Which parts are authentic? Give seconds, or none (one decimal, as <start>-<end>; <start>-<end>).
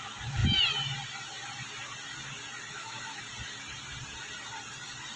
0.0-2.7; 3.2-5.2